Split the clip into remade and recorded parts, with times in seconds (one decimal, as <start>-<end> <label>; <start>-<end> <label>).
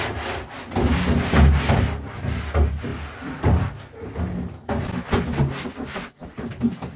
0.0-7.0 recorded